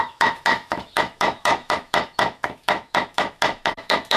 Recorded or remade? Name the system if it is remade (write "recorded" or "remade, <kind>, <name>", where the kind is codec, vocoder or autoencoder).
remade, autoencoder, DAC-VAE